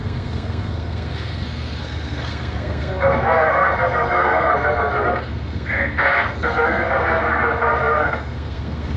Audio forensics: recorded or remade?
remade